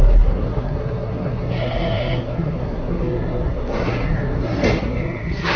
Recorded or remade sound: remade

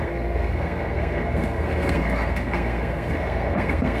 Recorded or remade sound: remade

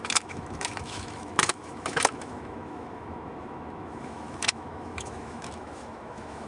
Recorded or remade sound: remade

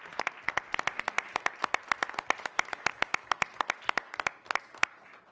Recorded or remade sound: recorded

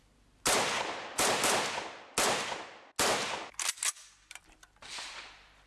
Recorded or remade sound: recorded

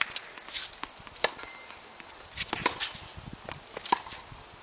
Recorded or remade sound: recorded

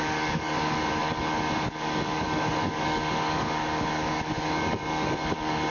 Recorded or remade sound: remade